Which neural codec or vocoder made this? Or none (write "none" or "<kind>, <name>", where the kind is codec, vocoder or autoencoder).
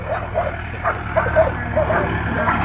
none